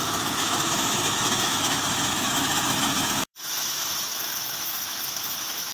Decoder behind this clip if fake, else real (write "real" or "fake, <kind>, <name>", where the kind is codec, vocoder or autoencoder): fake, autoencoder, DAC-VAE